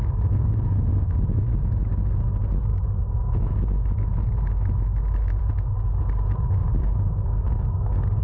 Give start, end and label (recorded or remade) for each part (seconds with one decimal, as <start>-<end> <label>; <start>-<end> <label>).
0.0-1.5 remade; 1.5-2.7 recorded; 2.7-3.5 remade; 3.5-6.6 recorded; 6.6-8.2 remade